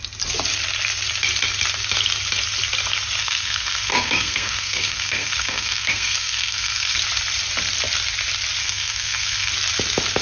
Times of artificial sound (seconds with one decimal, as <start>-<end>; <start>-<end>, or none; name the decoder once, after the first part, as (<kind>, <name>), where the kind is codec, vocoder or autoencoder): 3.2-7.0 (codec, SNAC); 8.6-9.5